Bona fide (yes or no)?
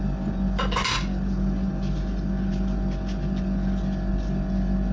yes